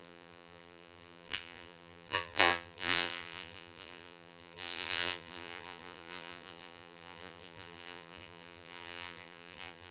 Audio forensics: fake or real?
fake